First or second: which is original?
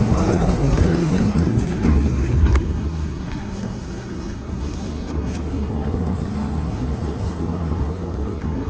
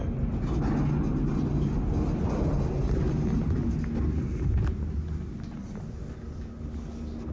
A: second